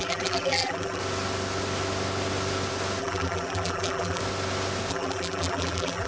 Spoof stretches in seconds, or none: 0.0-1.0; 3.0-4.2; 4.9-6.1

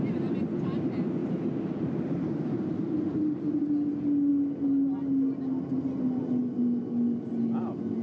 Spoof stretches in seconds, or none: 1.2-3.4

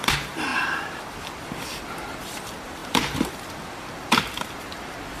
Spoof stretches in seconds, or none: 0.0-5.2

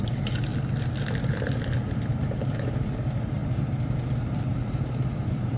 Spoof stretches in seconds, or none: 0.0-0.5; 1.2-3.4; 4.5-5.6

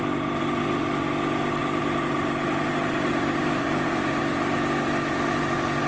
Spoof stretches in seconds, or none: 1.6-4.2